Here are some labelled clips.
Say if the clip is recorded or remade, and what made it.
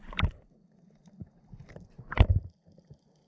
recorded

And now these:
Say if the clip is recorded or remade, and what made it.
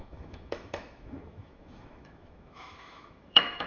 remade, autoencoder, DAC-VAE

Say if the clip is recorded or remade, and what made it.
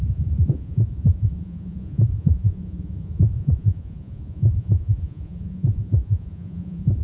remade, vocoder, Vocos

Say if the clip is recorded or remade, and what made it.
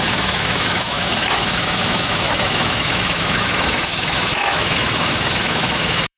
remade, autoencoder, DAC-VAE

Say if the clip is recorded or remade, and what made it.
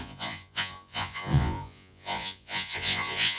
remade, vocoder, Vocos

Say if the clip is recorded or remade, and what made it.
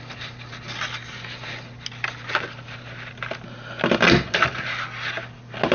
recorded